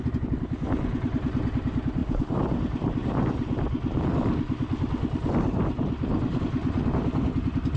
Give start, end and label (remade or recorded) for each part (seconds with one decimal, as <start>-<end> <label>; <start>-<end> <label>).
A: 0.0-7.8 recorded